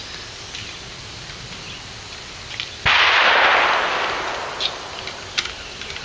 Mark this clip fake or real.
real